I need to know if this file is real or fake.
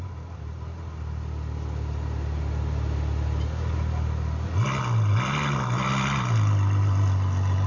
real